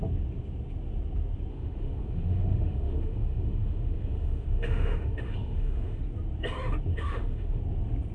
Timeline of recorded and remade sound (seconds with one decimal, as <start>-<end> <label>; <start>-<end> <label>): 0.0-1.5 recorded; 1.5-6.0 remade; 6.0-6.9 recorded; 6.9-7.6 remade; 7.6-8.1 recorded

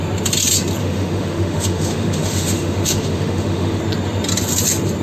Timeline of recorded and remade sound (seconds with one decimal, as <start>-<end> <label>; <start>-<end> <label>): 0.0-0.8 recorded; 0.8-3.8 remade; 3.8-5.0 recorded